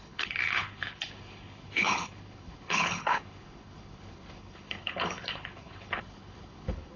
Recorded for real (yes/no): no